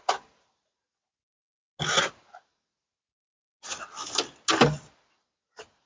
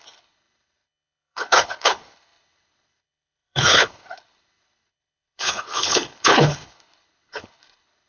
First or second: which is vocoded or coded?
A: second